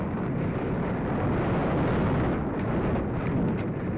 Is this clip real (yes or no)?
yes